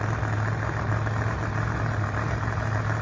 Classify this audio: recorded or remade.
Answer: recorded